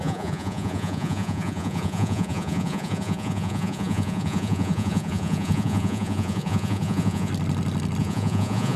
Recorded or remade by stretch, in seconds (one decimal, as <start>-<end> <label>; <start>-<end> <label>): 0.0-7.3 remade; 7.3-8.0 recorded; 8.0-8.8 remade